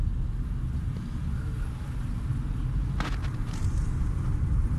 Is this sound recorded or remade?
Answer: recorded